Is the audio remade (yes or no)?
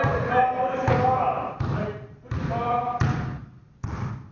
no